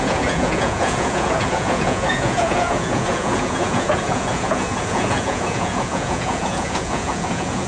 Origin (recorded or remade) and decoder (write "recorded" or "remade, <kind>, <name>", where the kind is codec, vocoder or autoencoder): remade, vocoder, Vocos